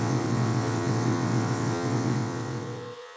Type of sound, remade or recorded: remade